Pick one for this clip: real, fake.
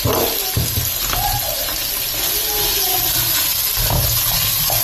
real